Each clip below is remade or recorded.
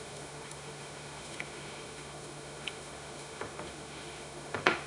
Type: remade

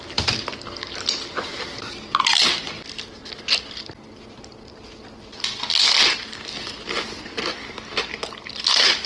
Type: recorded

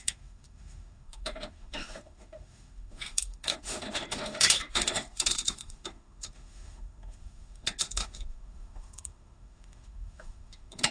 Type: remade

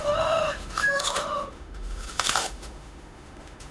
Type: remade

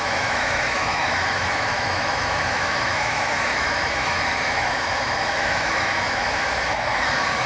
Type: remade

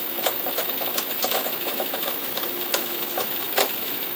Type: remade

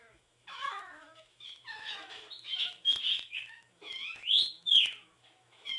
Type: remade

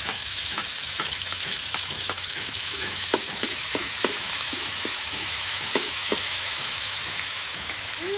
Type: remade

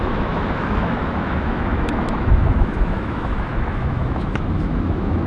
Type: remade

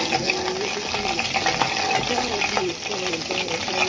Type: recorded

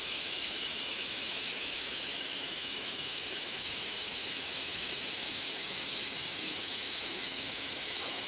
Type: remade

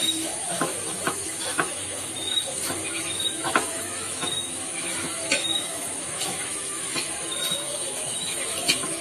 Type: remade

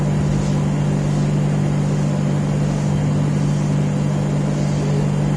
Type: recorded